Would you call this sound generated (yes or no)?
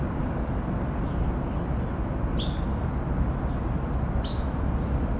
no